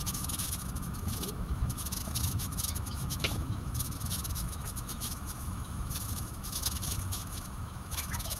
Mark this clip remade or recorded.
remade